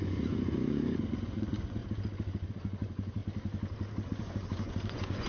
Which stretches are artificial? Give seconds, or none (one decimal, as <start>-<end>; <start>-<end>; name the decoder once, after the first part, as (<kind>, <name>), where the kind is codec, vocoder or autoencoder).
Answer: 0.0-1.8 (vocoder, Vocos); 2.5-3.2; 4.1-5.3